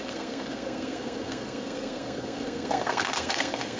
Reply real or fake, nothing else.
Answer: fake